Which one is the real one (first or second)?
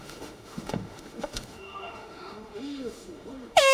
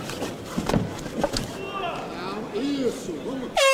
second